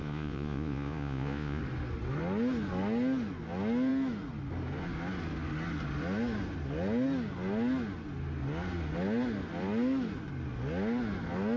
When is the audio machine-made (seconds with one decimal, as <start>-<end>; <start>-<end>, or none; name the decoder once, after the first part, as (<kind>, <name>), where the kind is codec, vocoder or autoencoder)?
0.0-1.6 (vocoder, Vocos)